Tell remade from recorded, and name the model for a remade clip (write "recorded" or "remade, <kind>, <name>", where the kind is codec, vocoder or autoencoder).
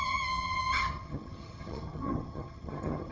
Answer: remade, vocoder, HiFi-GAN